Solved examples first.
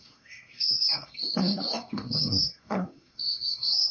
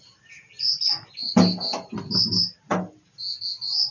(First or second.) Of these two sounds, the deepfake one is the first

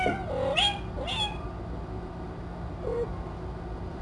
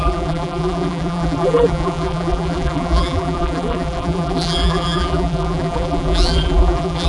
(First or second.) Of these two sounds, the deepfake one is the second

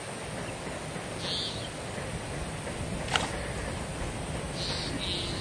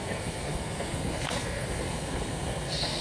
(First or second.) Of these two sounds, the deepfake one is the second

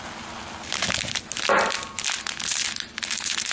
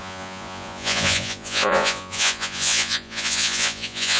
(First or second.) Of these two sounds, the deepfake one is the second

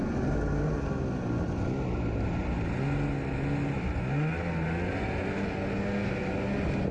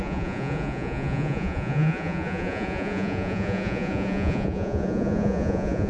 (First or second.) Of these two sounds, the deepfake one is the second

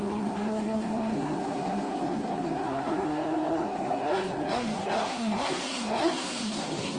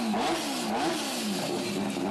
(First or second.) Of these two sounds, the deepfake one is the first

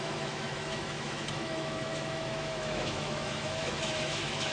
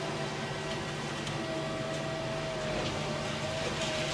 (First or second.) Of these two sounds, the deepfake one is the first